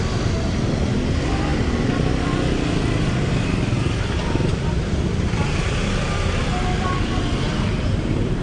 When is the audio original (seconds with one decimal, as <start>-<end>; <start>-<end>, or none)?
0.0-8.4